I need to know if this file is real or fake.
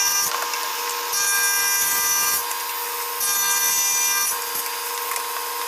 real